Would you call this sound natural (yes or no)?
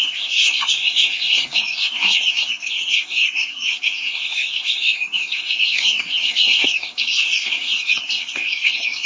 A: no